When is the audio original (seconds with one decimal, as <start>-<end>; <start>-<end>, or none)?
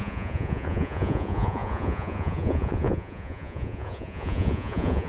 none